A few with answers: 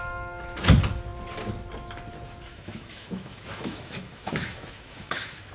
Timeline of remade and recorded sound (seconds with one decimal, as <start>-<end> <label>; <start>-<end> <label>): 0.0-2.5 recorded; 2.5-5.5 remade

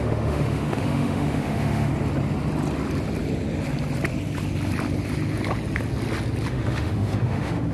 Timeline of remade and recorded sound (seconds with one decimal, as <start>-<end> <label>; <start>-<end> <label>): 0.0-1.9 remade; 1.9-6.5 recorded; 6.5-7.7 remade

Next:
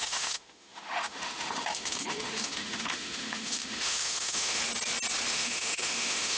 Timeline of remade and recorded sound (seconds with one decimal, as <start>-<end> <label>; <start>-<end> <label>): 0.0-4.6 remade; 4.6-5.3 recorded; 5.3-6.4 remade